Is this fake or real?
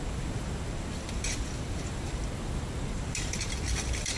real